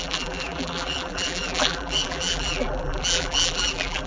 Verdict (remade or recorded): remade